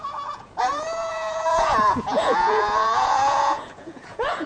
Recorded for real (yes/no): no